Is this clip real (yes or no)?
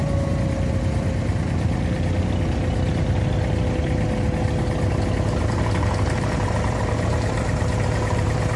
yes